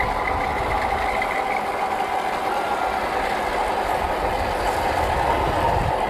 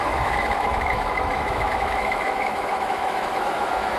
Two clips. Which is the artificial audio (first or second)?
second